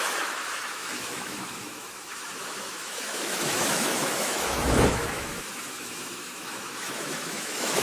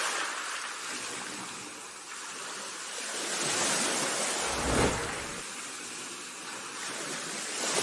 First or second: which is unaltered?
second